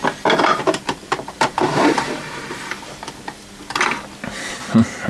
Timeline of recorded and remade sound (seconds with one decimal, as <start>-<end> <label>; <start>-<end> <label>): 0.0-0.6 recorded; 0.6-3.7 remade; 3.7-5.1 recorded